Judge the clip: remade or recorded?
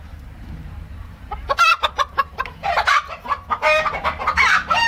remade